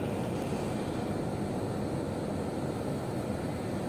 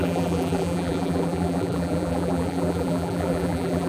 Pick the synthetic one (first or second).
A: second